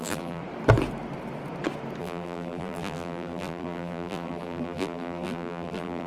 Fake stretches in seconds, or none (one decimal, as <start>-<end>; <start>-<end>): 0.0-0.4; 2.0-6.1